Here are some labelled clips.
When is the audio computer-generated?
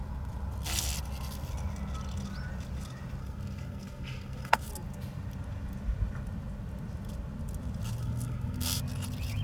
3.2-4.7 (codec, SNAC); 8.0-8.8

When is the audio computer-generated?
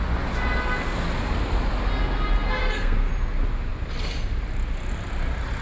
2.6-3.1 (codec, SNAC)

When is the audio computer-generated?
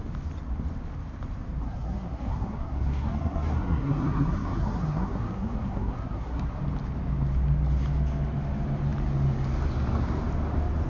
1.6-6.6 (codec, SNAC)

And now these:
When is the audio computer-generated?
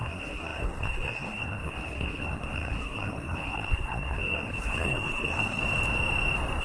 0.0-5.6 (codec, SNAC)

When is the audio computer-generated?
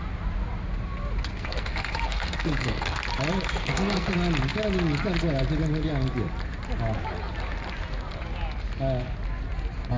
1.3-3.0 (codec, SNAC); 3.6-4.1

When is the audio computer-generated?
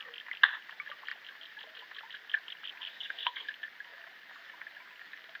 2.9-3.5 (codec, SNAC)